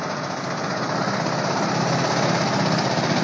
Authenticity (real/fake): real